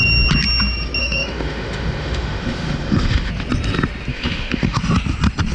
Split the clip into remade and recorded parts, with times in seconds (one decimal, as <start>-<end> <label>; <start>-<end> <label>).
0.0-1.0 recorded; 1.0-3.3 remade; 3.3-4.1 recorded; 4.1-4.8 remade; 4.8-5.5 recorded